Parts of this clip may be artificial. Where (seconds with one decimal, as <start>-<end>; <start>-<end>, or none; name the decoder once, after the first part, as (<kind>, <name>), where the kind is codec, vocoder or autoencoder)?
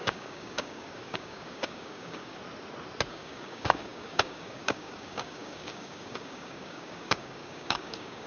0.0-2.4 (codec, DAC); 3.1-8.3